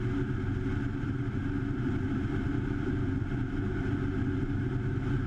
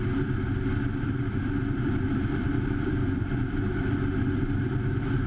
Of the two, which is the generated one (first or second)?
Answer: second